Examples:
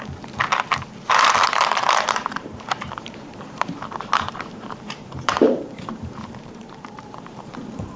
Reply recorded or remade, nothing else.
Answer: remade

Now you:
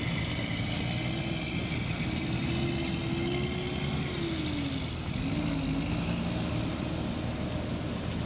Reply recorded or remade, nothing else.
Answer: recorded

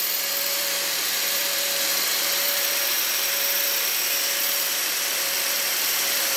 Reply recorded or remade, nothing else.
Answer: remade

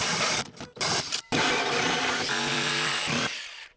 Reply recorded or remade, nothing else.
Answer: remade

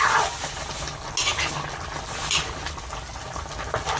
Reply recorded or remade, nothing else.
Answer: recorded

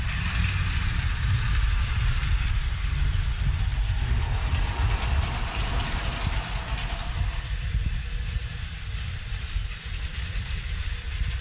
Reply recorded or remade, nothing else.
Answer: recorded